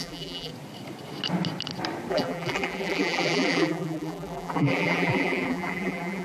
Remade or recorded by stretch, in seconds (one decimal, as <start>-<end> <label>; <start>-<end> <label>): 0.0-0.5 remade; 0.5-2.1 recorded; 2.1-6.2 remade